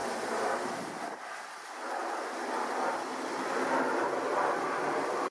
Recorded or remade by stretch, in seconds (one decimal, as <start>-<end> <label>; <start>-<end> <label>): 0.0-0.9 remade; 0.9-5.3 recorded